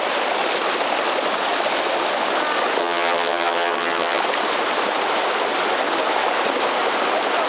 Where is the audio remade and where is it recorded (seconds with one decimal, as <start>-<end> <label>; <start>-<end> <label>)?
0.0-2.8 recorded; 2.8-4.2 remade; 4.2-7.5 recorded